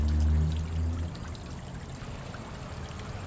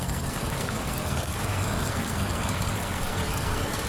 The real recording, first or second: first